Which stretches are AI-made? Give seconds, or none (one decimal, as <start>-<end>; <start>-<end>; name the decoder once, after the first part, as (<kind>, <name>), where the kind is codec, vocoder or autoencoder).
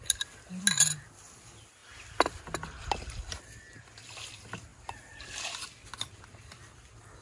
none